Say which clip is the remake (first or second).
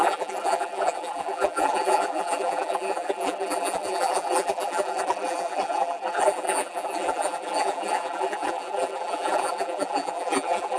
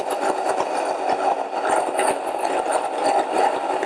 first